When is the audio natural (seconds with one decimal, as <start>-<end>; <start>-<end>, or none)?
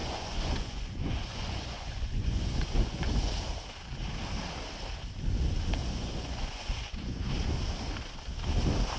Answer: 3.3-5.8; 7.3-9.0